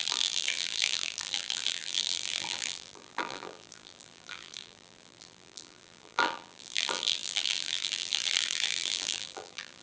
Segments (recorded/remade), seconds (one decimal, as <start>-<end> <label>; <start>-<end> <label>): 0.0-9.8 remade